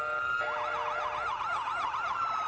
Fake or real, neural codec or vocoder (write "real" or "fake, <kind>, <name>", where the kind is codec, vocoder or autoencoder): real